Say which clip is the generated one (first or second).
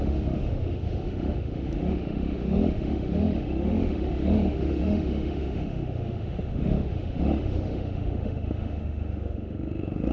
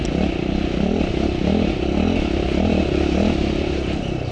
first